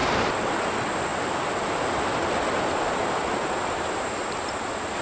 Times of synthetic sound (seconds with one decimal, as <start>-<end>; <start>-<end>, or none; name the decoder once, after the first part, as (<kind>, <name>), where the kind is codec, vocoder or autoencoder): 0.0-1.1 (vocoder, BigVGAN v2); 2.9-5.0